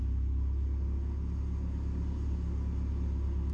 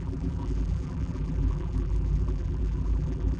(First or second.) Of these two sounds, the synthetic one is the second